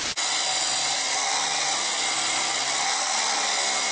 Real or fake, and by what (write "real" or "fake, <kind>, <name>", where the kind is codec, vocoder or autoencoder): real